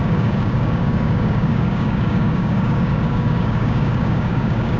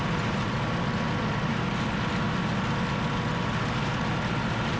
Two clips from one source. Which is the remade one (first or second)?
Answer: first